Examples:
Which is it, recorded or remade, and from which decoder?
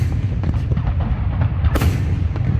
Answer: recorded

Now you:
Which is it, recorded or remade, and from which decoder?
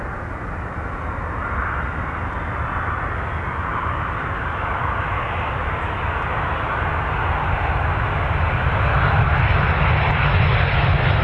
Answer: recorded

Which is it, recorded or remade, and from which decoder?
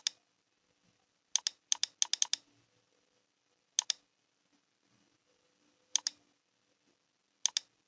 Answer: recorded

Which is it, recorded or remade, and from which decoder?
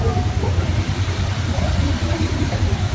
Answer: remade, vocoder, BigVGAN v2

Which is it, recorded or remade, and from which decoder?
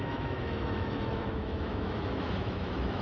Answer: remade, autoencoder, DAC-VAE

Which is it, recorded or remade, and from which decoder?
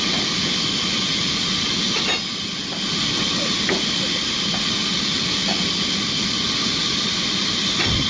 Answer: recorded